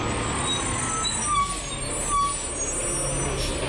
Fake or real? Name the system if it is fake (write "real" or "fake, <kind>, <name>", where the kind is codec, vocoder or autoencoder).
real